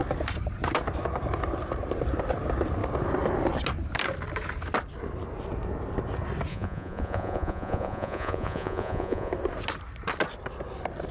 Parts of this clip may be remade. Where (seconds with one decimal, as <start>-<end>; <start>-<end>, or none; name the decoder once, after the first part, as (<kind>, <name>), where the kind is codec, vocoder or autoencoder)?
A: 6.5-9.3 (vocoder, Vocos)